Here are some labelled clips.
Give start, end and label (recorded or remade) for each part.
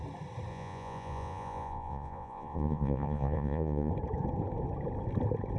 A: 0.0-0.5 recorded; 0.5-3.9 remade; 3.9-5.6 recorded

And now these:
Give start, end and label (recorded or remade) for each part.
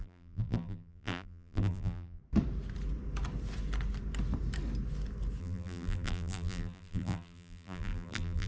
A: 0.0-2.2 remade; 2.2-5.4 recorded; 5.4-8.5 remade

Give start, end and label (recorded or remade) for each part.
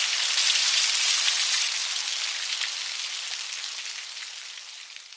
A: 0.0-5.2 recorded